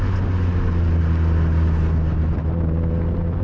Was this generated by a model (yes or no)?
no